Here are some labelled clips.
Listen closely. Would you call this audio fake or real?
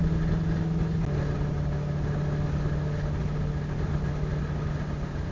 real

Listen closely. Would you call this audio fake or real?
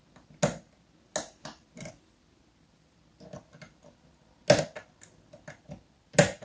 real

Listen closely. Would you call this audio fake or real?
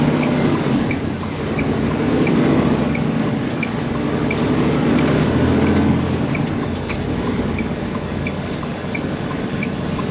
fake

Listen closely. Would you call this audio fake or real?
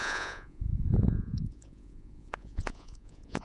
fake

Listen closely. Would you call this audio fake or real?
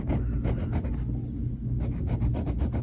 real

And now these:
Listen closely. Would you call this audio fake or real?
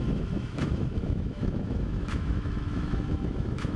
fake